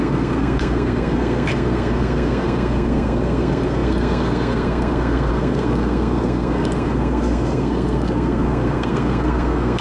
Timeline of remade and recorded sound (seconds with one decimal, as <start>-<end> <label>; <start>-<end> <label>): 0.0-9.8 remade